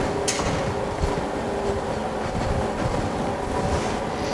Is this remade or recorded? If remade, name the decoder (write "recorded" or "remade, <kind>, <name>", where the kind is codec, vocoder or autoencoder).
recorded